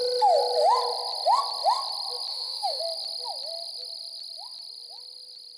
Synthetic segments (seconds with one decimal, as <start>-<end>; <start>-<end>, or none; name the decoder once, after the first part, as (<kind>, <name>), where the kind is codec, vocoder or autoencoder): 2.3-2.8 (autoencoder, DAC-VAE)